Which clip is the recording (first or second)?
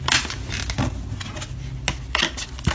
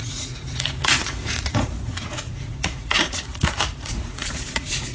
first